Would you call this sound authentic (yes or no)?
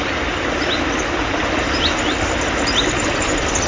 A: yes